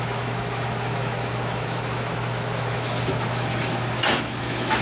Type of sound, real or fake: fake